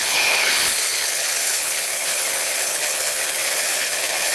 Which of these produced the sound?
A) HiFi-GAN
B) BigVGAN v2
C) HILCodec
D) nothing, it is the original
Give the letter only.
C